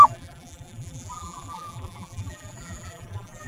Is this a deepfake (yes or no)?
yes